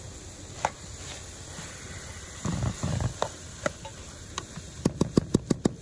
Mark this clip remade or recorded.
recorded